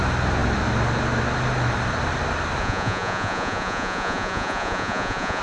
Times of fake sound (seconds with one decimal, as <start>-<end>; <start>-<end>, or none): 2.6-5.4